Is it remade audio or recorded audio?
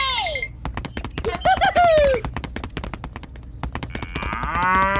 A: recorded